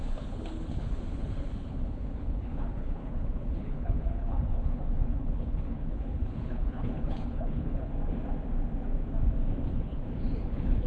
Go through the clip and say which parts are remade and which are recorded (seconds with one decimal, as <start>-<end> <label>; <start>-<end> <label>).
0.0-7.9 remade; 7.9-9.7 recorded; 9.7-10.9 remade